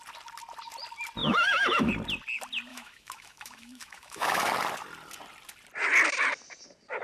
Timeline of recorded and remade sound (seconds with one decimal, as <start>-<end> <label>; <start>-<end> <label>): 0.0-1.2 recorded; 1.2-1.9 remade; 1.9-2.7 recorded; 2.7-4.5 remade; 4.5-7.0 recorded